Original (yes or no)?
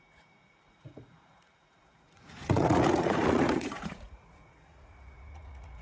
no